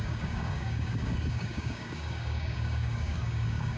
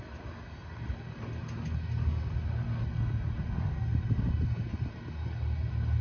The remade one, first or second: first